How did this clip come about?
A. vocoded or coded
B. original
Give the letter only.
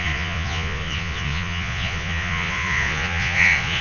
A